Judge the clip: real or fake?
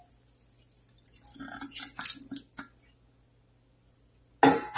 real